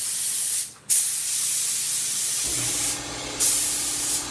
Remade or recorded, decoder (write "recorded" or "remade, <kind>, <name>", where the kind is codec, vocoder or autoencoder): recorded